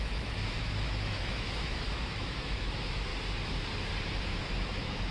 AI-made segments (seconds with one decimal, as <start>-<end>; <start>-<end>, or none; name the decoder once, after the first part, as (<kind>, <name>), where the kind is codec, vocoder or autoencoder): 0.0-3.1 (autoencoder, DAC-VAE); 4.2-5.1